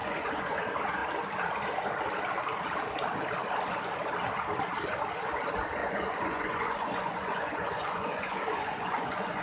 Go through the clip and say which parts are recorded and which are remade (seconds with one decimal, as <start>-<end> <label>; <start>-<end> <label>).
0.0-0.6 remade; 0.6-5.8 recorded; 5.8-9.4 remade